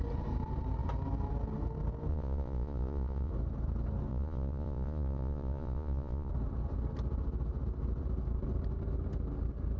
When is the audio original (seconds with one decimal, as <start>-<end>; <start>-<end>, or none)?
0.0-2.1; 3.3-4.1; 6.3-9.8